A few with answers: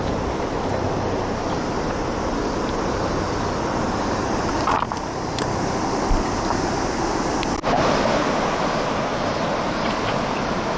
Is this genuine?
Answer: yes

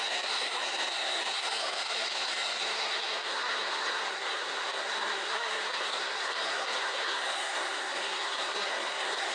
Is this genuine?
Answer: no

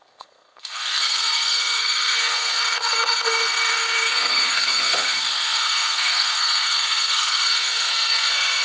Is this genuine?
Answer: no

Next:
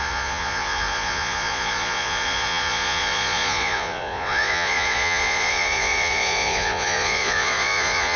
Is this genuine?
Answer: no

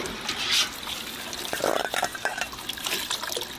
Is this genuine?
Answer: yes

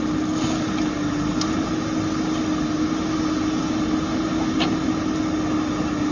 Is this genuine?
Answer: yes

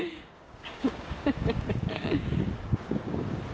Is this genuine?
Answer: no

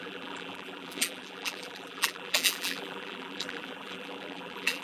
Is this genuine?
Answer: no